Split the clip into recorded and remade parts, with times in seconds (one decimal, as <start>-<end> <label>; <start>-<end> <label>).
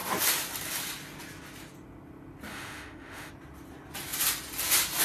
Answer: 0.0-2.5 recorded; 2.5-3.3 remade; 3.3-5.0 recorded